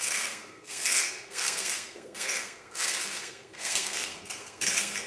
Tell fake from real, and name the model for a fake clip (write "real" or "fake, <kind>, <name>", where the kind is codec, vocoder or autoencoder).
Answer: fake, codec, SNAC